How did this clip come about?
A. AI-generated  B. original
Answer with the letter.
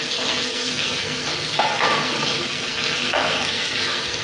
A